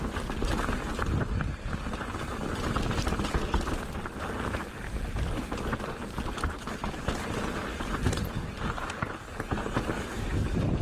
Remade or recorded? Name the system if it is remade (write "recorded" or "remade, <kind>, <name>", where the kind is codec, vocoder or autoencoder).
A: recorded